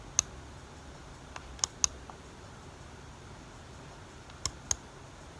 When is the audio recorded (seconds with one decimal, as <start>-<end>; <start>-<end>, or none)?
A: 0.0-5.4